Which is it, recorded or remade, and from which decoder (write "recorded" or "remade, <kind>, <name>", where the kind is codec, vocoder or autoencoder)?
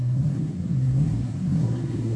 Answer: remade, codec, SNAC